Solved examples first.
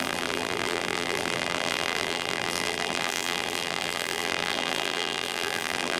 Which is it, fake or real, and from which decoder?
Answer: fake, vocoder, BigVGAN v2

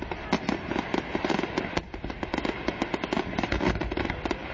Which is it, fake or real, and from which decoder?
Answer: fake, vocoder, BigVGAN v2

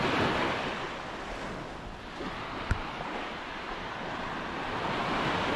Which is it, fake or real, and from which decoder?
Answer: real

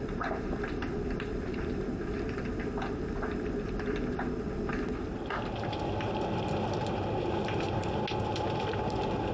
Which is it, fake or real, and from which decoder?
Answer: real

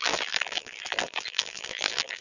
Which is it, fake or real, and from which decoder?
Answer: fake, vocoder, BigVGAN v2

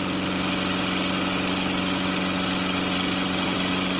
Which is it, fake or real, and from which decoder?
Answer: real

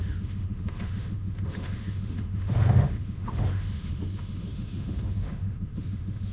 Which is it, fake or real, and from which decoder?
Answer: fake, autoencoder, DAC-VAE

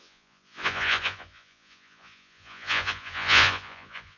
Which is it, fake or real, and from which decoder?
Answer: fake, vocoder, Vocos